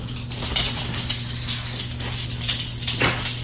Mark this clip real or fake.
real